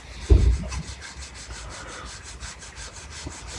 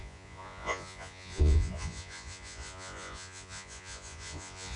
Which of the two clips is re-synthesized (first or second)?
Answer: second